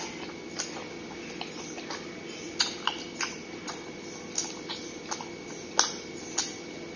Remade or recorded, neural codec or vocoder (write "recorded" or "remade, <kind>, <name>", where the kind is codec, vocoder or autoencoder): recorded